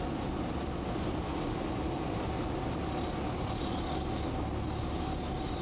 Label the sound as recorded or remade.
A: recorded